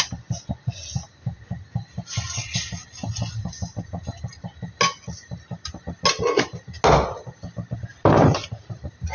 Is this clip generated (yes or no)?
no